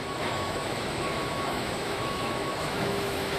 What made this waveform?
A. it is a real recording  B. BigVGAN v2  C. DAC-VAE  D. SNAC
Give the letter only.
C